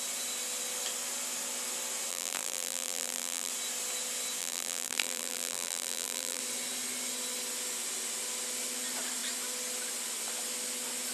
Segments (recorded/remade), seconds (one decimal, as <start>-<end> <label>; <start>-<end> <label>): 0.0-2.1 recorded; 2.1-3.5 remade; 3.5-4.4 recorded; 4.4-6.4 remade; 6.4-11.1 recorded